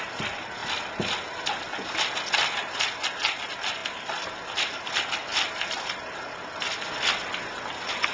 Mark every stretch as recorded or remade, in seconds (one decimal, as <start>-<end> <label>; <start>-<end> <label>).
0.0-8.1 recorded